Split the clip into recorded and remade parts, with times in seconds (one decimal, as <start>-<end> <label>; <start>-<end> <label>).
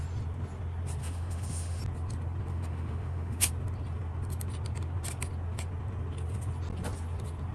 0.0-1.0 recorded; 1.0-1.8 remade; 1.8-2.5 recorded; 2.5-3.5 remade; 3.5-7.5 recorded